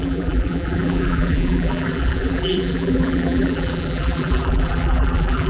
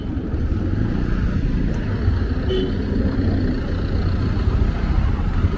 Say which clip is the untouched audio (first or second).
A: second